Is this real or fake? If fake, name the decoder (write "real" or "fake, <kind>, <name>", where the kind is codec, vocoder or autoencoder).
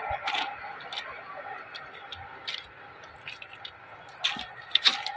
real